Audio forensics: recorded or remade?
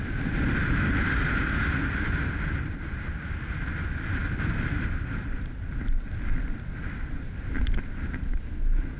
recorded